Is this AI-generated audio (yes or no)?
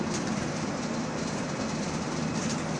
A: no